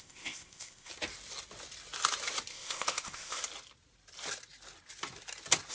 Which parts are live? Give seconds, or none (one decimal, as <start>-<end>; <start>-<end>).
0.9-2.5; 3.4-5.7